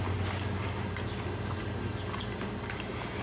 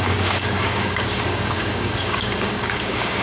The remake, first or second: second